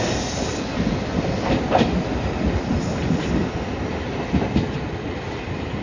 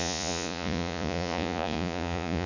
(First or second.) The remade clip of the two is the second